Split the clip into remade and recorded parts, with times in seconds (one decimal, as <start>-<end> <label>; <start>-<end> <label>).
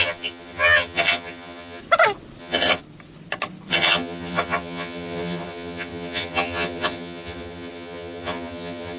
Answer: 0.0-1.8 remade; 1.8-2.4 recorded; 2.4-2.8 remade; 2.8-3.7 recorded; 3.7-9.0 remade